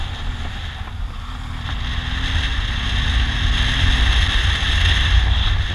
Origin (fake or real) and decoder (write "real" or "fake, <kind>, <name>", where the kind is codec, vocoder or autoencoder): real